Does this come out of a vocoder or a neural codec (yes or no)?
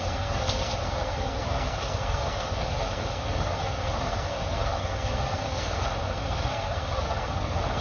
yes